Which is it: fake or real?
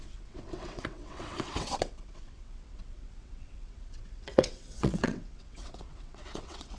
fake